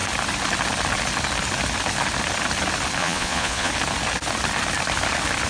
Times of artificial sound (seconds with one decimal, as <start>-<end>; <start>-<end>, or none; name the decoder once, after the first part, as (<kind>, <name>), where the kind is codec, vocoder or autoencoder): 3.0-3.7 (vocoder, Vocos)

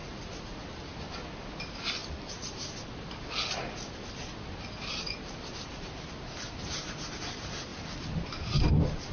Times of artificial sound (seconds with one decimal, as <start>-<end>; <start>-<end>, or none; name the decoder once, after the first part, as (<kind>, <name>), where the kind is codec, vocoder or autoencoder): 0.0-0.6 (vocoder, Vocos)

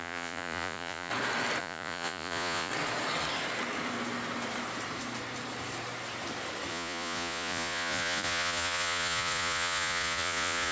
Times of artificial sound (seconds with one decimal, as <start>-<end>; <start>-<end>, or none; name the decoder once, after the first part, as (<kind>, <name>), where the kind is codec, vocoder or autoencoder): 0.0-1.1 (vocoder, Vocos); 1.6-2.7; 6.7-10.7